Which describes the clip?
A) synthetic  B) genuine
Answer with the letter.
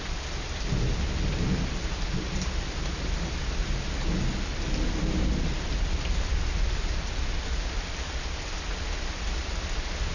B